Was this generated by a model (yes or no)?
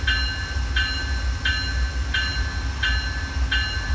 no